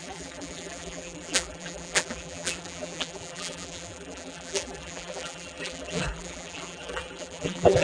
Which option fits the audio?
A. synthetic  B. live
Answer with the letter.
A